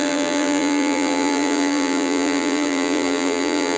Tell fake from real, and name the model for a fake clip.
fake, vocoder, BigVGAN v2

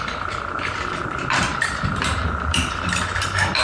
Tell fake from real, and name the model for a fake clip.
fake, vocoder, BigVGAN v2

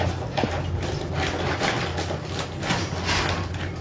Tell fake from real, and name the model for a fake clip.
real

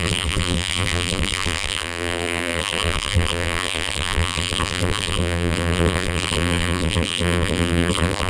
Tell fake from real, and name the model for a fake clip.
fake, vocoder, BigVGAN v2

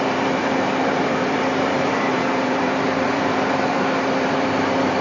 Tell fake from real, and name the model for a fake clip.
fake, vocoder, BigVGAN v2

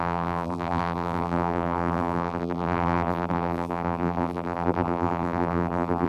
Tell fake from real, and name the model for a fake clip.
fake, vocoder, BigVGAN v2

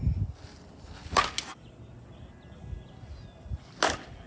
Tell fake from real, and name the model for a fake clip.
real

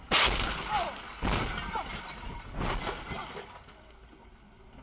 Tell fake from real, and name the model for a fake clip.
real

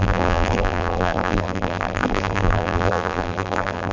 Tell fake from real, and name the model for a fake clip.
fake, vocoder, BigVGAN v2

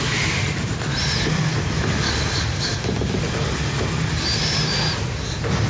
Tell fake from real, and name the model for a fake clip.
real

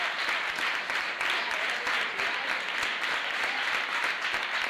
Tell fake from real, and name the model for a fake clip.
real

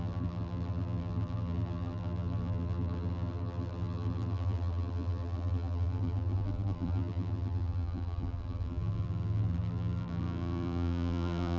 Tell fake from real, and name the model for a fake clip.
fake, vocoder, BigVGAN v2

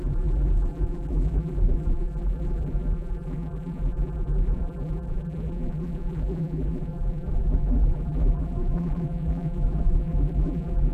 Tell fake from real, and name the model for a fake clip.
fake, vocoder, BigVGAN v2